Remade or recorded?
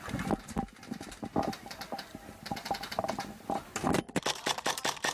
recorded